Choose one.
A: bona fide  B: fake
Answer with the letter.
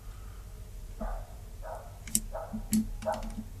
A